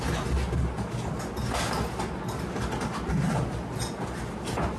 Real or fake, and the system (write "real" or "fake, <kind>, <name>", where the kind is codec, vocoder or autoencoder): real